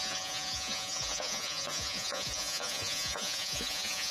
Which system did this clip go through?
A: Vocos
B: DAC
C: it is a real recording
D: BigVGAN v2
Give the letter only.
A